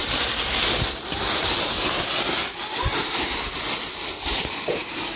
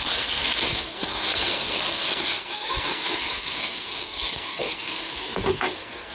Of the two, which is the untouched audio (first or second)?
first